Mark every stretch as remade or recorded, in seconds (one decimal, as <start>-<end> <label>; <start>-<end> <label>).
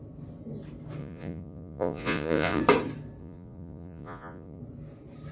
0.0-1.0 recorded; 1.0-2.6 remade; 2.6-3.2 recorded; 3.2-4.6 remade; 4.6-5.3 recorded